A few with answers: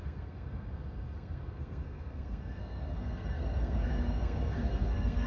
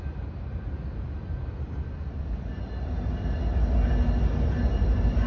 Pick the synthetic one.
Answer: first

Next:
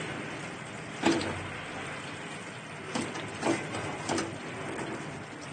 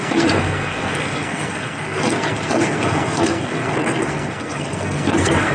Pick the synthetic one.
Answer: second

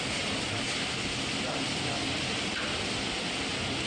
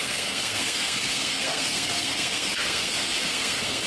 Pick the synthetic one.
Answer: second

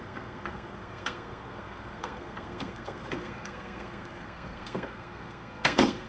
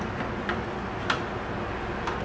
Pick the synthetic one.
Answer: first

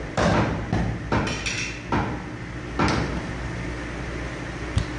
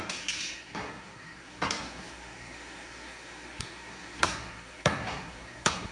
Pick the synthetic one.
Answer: second